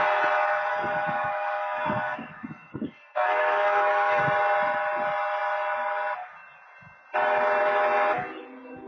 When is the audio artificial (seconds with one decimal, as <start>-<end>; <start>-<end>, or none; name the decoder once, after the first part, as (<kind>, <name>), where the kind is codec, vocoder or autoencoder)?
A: 0.7-4.2 (codec, SNAC)